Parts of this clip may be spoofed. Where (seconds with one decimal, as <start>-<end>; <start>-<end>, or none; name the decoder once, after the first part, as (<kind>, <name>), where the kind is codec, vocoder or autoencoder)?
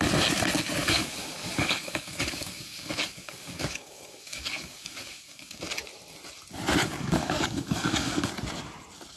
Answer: 0.8-5.6 (codec, DAC); 6.8-8.3